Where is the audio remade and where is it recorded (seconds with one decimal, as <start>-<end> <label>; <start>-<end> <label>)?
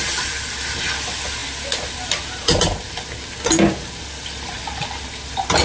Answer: 0.0-5.6 recorded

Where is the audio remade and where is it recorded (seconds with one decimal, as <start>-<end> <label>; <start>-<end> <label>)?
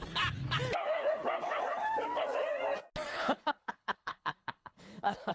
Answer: 0.0-3.1 recorded; 3.1-5.3 remade